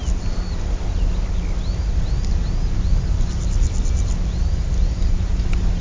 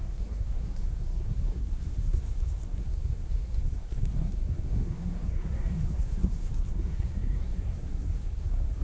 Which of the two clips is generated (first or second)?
second